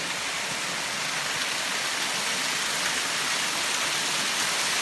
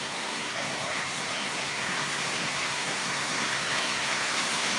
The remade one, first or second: second